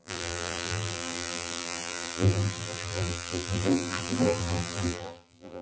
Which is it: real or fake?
fake